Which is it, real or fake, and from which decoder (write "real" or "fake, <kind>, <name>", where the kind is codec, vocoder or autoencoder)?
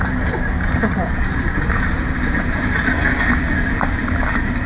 real